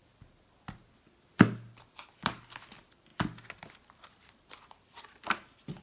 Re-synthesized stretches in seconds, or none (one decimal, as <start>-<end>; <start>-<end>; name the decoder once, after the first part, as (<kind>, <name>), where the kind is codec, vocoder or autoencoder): none